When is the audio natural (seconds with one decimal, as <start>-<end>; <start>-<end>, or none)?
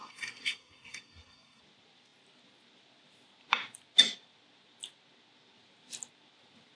1.6-6.7